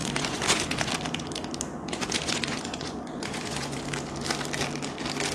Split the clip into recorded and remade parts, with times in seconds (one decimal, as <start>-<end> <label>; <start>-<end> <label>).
0.0-0.9 remade; 0.9-1.7 recorded; 1.7-3.8 remade; 3.8-5.3 recorded